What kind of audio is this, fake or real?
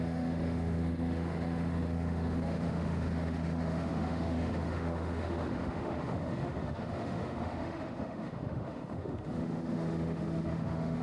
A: fake